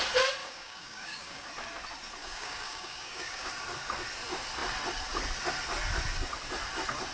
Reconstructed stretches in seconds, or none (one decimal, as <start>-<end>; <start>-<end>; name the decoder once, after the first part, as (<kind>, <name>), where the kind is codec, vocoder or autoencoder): 0.4-1.5 (codec, DAC); 2.2-3.5